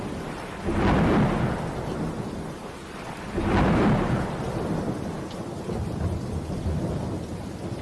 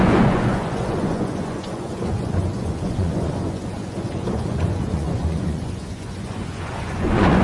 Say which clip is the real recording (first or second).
first